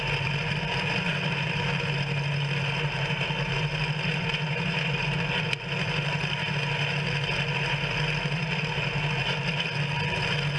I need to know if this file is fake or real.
real